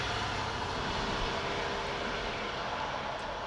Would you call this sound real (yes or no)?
yes